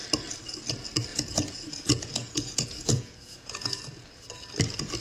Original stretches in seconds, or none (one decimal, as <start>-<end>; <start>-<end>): 0.0-1.1; 3.8-5.0